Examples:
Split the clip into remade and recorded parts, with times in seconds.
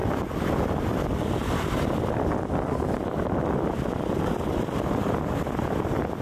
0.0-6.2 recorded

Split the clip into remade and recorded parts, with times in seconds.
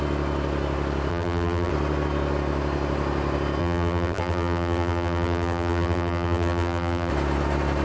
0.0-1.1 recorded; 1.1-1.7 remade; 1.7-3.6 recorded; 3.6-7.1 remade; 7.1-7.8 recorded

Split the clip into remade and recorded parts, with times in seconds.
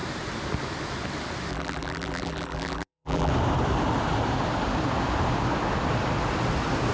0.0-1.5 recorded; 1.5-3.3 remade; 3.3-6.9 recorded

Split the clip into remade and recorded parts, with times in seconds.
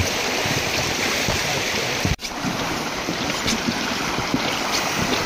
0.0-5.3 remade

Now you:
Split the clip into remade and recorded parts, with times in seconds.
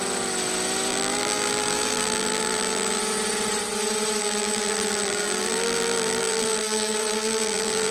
0.0-0.9 recorded; 0.9-3.0 remade; 3.0-4.2 recorded; 4.2-7.9 remade